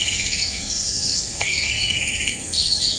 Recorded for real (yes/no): no